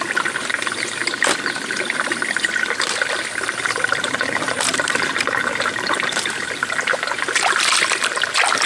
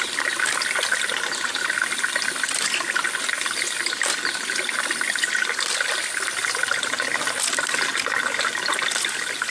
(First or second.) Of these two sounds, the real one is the second